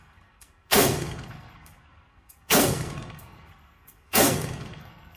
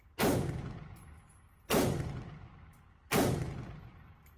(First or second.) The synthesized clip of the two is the first